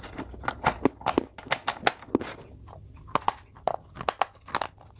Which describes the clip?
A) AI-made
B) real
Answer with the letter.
B